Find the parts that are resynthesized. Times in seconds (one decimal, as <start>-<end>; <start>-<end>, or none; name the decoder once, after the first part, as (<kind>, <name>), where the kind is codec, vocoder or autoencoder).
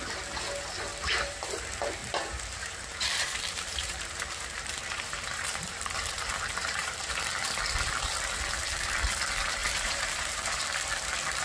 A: 0.9-1.6 (vocoder, BigVGAN v2); 2.0-7.2; 9.6-10.6